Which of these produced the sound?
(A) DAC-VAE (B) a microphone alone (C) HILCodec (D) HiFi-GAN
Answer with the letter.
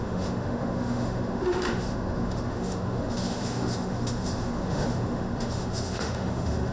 A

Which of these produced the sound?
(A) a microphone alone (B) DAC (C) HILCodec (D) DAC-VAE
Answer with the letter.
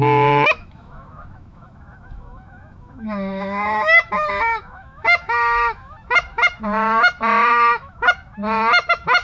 D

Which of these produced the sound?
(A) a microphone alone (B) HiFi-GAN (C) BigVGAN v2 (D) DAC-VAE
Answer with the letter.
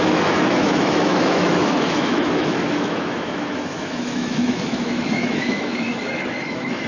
D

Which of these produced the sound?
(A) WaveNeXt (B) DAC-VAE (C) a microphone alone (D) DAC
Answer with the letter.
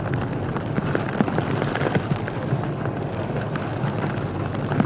C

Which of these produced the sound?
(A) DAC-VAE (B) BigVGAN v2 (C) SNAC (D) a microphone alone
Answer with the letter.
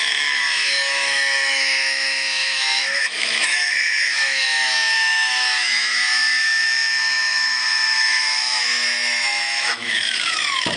A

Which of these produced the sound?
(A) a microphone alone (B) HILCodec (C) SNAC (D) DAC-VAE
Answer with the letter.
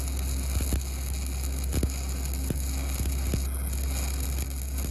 A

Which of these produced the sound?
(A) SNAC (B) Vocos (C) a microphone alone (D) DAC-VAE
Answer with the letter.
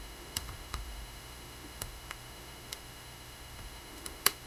D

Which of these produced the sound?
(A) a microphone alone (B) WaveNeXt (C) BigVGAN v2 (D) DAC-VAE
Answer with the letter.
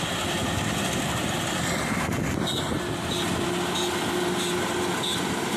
A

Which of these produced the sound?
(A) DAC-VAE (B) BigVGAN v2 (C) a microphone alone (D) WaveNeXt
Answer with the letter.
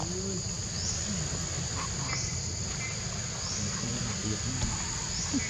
C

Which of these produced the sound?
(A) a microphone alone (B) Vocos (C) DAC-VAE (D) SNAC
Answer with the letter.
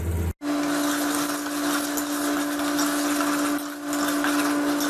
A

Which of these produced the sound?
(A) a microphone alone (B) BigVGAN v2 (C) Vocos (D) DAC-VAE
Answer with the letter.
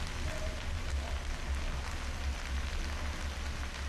A